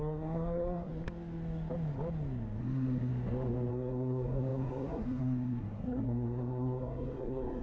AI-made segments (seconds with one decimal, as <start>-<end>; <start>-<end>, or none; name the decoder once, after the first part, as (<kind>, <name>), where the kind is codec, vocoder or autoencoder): 0.0-0.9 (codec, SNAC); 2.6-3.1; 3.7-7.6